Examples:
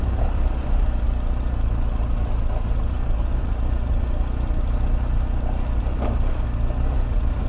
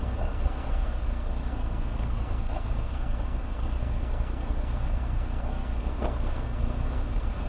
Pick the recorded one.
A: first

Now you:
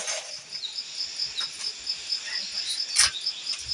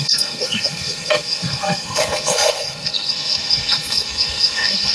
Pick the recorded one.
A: first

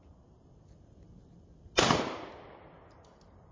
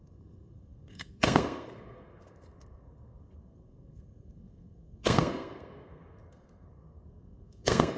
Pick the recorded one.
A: first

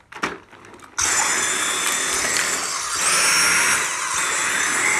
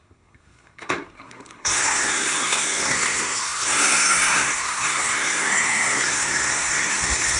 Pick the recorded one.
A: first